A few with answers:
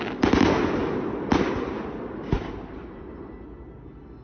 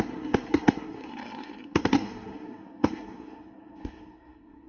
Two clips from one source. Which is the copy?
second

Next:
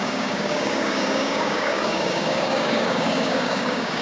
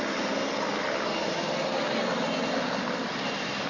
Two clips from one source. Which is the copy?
first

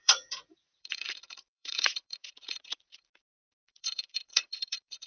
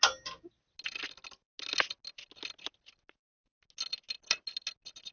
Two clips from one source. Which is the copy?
first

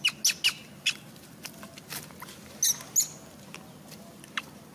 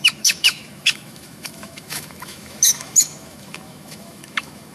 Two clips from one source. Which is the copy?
second